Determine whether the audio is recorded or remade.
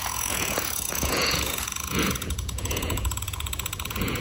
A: remade